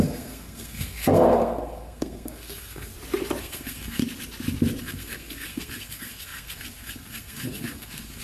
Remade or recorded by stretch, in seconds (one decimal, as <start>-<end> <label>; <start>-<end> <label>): 0.0-2.9 remade; 2.9-3.4 recorded; 3.4-4.0 remade; 4.0-4.8 recorded; 4.8-8.2 remade